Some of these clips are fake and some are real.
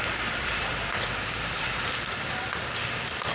real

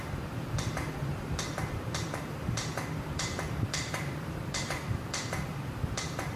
fake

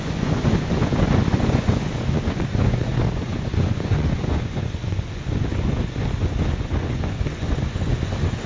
fake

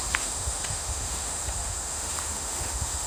fake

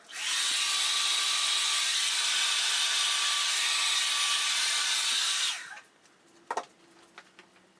real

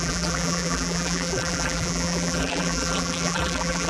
fake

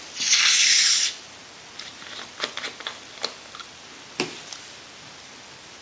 real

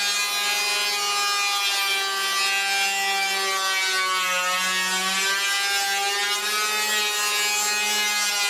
real